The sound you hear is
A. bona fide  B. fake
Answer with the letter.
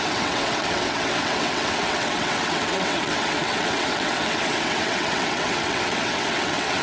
B